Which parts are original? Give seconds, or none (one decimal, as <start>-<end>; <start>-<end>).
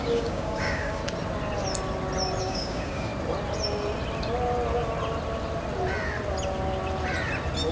1.0-2.4; 3.1-7.7